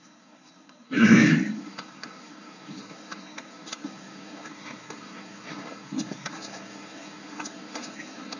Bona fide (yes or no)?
no